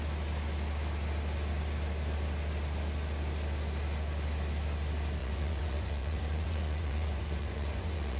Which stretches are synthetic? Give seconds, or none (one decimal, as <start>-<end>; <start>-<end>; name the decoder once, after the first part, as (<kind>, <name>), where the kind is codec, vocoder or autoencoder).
5.2-8.2 (vocoder, Vocos)